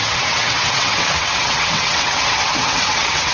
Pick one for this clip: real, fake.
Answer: fake